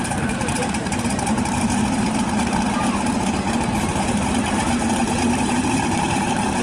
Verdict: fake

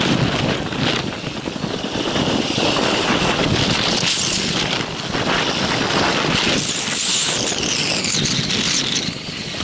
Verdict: real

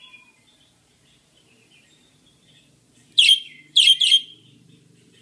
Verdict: fake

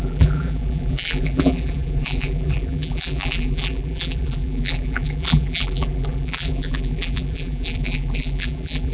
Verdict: fake